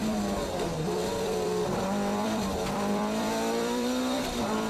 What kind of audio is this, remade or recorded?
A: remade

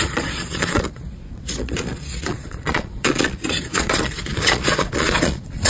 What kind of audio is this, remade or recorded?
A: remade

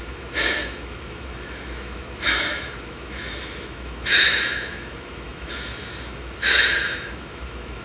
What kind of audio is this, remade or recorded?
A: remade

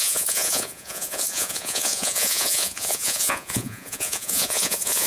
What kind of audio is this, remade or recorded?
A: remade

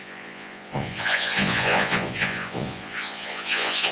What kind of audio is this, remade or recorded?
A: remade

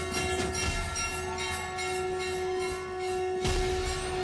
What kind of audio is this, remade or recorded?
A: recorded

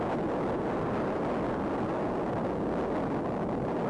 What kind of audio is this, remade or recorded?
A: recorded